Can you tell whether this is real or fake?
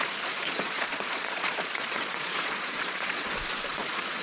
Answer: fake